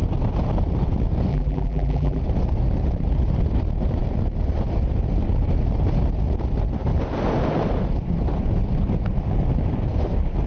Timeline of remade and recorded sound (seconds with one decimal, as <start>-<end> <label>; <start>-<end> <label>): 0.0-1.3 recorded; 1.3-2.2 remade; 2.2-10.5 recorded